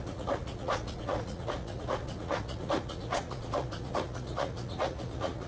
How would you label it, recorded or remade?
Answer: remade